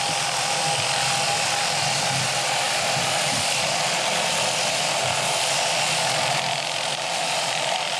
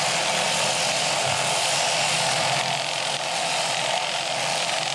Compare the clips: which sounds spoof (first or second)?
first